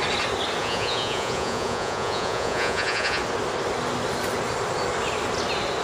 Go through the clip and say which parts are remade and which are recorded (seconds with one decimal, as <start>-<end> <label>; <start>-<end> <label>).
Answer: 0.0-0.6 recorded; 0.6-3.2 remade; 3.2-5.8 recorded